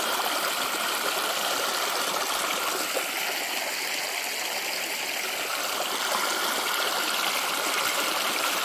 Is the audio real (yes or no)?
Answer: yes